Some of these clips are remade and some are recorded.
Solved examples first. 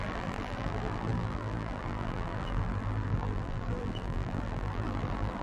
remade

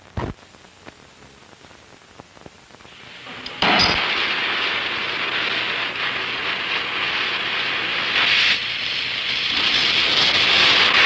recorded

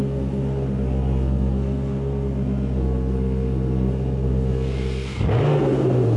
remade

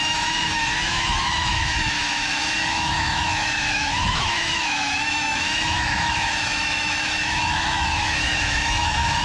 remade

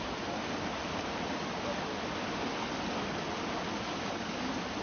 recorded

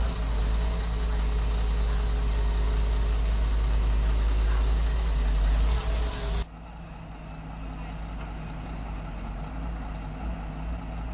recorded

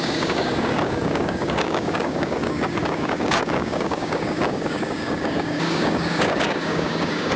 remade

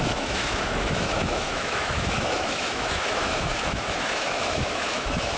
remade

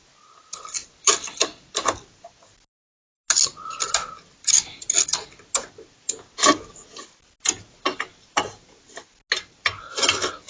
recorded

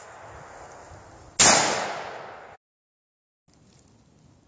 recorded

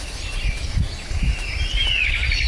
recorded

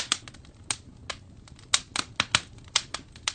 recorded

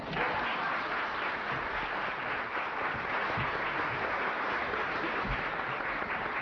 recorded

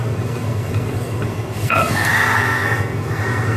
remade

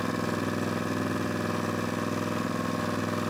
recorded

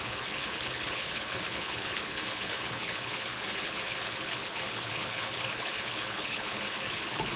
remade